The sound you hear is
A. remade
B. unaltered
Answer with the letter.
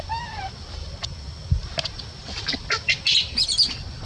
B